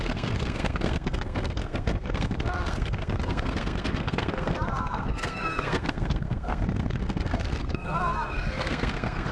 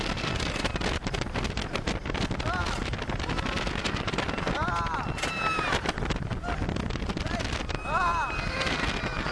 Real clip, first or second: second